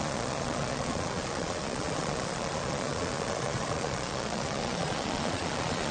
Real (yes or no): no